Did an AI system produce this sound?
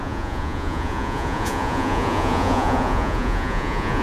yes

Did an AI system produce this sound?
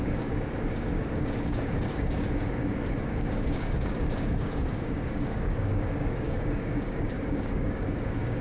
yes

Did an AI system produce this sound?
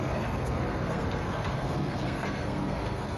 yes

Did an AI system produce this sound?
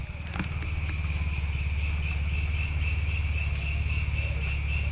no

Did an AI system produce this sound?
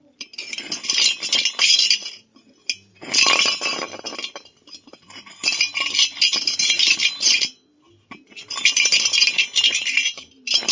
no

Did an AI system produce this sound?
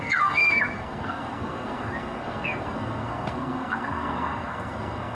yes